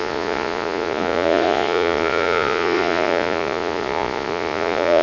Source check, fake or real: fake